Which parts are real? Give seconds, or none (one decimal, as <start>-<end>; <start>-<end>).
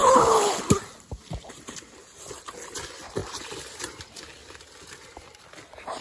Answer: 0.6-6.0